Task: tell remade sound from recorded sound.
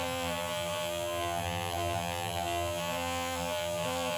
remade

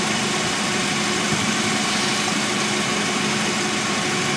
recorded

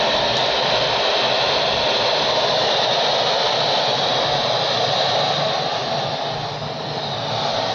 recorded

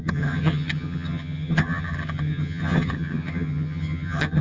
remade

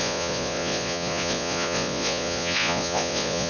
remade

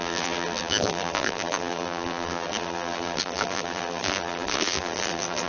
remade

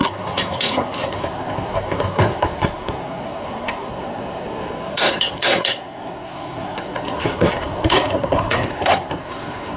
remade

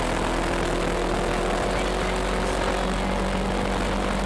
recorded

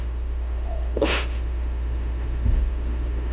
remade